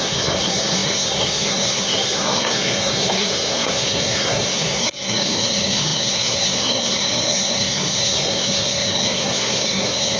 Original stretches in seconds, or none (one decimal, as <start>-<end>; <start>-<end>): none